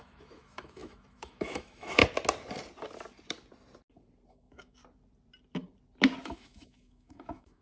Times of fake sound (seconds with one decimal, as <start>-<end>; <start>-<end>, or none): 0.0-2.0; 4.3-4.8; 6.2-7.6